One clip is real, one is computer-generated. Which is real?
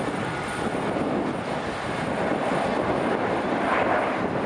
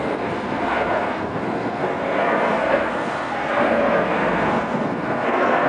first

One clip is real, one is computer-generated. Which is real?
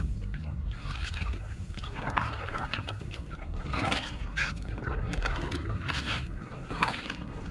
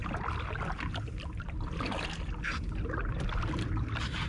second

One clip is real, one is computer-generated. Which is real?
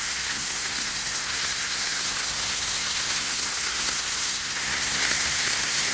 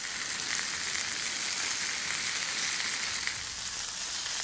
second